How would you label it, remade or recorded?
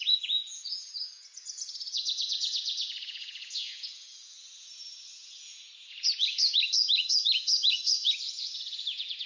remade